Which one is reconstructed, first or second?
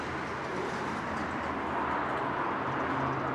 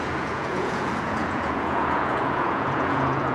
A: second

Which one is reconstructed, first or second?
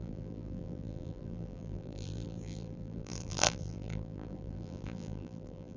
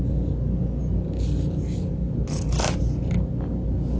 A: first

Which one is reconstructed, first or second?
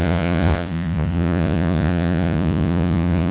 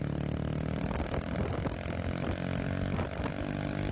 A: first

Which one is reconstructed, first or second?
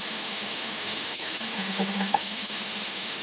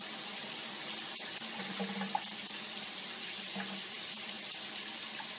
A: first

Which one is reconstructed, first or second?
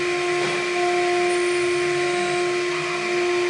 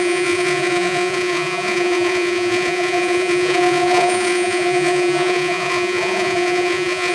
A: second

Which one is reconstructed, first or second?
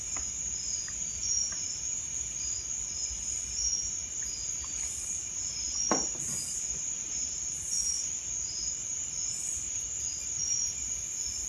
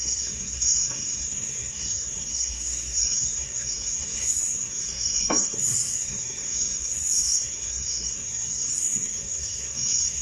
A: second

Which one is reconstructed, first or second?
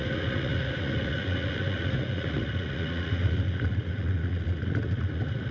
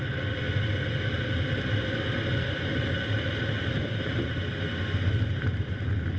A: first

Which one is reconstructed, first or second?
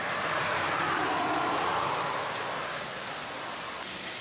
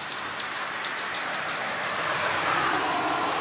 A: second